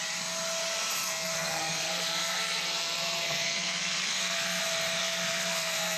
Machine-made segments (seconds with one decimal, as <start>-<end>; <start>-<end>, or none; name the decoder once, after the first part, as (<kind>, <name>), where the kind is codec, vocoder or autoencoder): 1.0-4.6 (codec, SNAC); 5.0-6.0